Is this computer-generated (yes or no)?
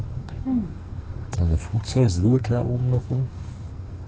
yes